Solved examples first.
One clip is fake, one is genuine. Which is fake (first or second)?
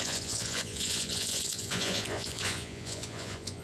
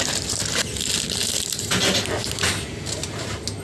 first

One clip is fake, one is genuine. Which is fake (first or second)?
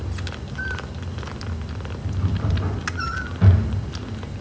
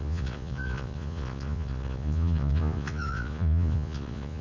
second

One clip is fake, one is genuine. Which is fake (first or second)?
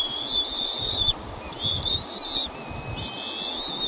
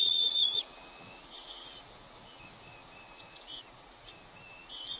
second